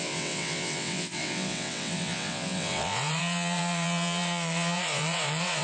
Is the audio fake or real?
fake